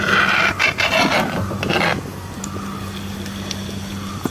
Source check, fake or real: real